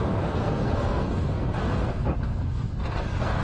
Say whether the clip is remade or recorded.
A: remade